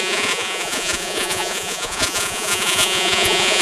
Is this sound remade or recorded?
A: remade